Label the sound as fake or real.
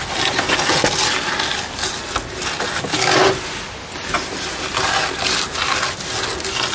real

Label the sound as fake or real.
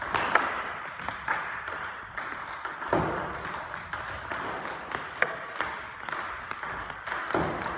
real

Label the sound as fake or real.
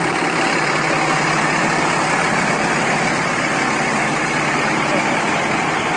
real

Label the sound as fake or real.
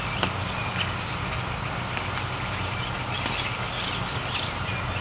real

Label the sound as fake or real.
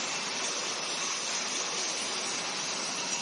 real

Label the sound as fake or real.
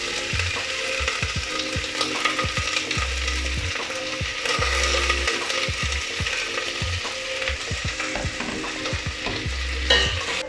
real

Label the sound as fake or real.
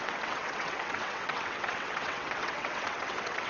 fake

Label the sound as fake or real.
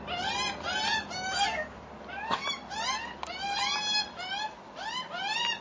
real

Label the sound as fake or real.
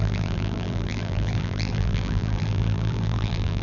fake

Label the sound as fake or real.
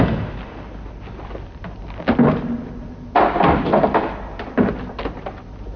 real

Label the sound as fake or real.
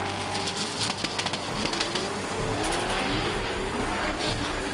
real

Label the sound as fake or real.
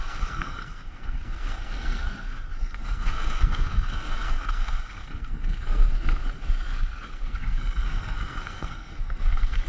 fake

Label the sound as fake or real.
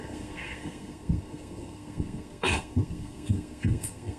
fake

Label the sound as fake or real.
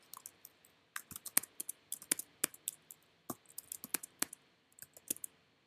real